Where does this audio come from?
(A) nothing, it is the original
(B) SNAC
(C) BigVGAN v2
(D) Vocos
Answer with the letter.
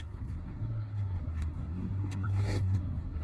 B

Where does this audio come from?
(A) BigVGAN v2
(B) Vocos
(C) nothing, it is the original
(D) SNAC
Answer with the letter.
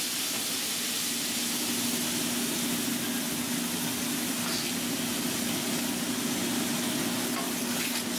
C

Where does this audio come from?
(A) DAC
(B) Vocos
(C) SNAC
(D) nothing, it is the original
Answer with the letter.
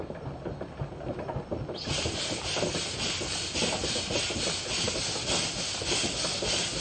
D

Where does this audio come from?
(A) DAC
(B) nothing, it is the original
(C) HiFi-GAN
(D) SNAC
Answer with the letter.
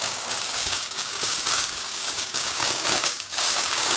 A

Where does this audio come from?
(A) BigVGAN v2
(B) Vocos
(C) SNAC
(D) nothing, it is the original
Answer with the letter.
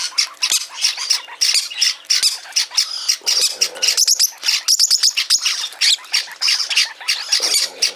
D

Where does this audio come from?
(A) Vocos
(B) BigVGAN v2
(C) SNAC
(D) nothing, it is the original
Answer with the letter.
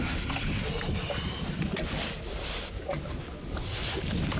D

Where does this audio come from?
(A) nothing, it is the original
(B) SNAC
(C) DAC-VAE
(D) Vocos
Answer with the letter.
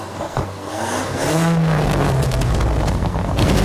B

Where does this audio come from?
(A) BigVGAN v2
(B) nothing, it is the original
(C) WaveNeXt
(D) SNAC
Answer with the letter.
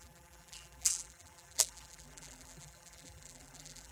A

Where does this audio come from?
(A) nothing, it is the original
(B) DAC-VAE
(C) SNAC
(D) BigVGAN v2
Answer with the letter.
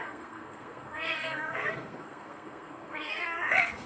C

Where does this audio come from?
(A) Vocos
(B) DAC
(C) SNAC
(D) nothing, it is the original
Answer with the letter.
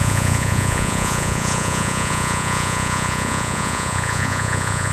A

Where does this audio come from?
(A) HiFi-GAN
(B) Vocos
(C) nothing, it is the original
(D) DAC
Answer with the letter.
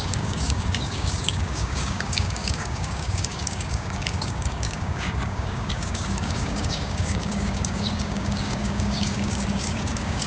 D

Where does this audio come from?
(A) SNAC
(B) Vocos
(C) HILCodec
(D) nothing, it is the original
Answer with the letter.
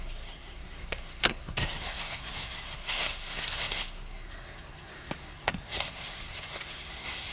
A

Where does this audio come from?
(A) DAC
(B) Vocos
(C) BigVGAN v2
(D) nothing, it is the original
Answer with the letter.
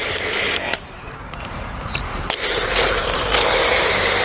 C